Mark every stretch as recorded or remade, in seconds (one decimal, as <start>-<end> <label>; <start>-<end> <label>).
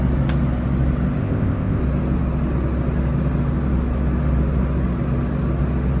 0.0-1.2 recorded; 1.2-1.8 remade; 1.8-6.0 recorded